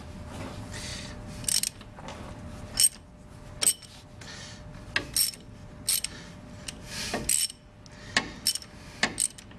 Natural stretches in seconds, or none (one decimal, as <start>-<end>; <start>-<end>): 0.0-9.6